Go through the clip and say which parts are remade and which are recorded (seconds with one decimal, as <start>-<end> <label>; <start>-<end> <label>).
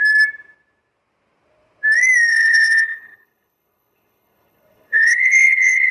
0.0-2.3 recorded; 2.3-5.9 remade